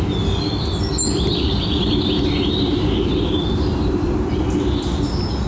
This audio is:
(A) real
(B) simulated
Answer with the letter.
A